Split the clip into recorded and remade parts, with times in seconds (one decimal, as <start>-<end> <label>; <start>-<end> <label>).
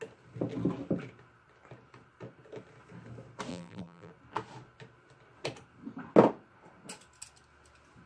0.0-3.5 recorded; 3.5-4.1 remade; 4.1-8.1 recorded